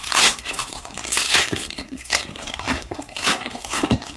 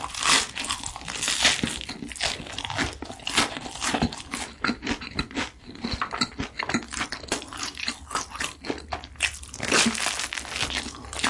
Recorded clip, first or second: second